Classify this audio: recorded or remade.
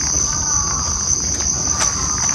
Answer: recorded